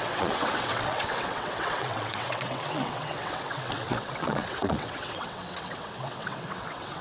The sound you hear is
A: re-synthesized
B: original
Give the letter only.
A